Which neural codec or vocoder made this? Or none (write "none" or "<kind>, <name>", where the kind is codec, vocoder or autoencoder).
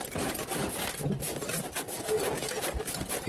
none